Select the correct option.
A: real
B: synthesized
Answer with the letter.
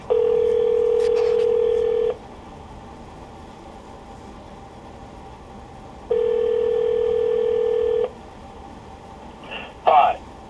A